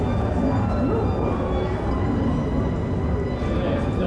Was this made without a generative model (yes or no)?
yes